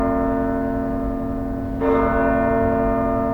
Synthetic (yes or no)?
no